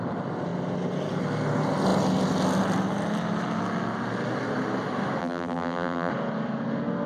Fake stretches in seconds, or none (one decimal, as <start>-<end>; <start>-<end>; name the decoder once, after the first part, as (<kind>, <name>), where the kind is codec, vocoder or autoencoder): 5.2-6.1 (vocoder, BigVGAN v2)